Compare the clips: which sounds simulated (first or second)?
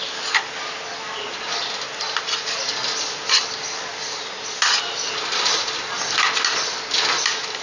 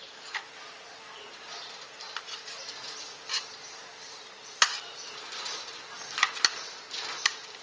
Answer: second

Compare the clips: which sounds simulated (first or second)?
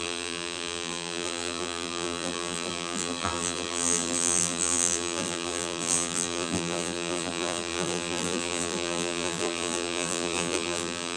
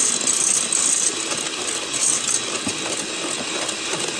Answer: first